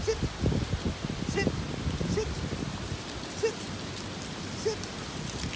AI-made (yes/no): no